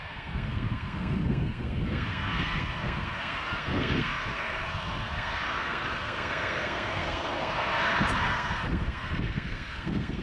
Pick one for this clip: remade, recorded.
remade